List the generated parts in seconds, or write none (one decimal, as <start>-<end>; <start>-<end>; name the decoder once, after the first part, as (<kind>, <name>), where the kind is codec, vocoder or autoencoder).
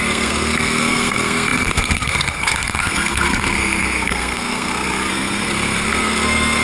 0.0-6.6 (codec, SNAC)